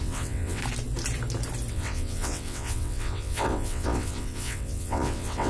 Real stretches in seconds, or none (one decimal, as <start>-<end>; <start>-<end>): 0.6-1.7